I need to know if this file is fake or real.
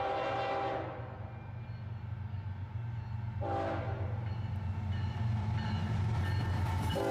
real